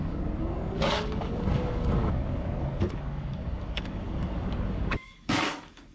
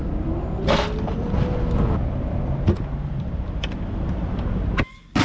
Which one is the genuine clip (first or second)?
second